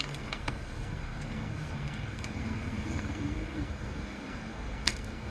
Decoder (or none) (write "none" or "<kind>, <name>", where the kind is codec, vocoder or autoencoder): codec, SNAC